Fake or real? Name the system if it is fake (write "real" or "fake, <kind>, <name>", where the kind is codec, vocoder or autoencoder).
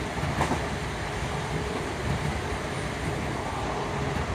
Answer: fake, vocoder, BigVGAN v2